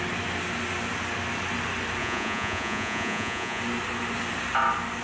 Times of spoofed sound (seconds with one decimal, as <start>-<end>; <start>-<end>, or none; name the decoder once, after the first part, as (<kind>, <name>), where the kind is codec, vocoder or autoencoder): 2.0-3.6 (vocoder, Vocos)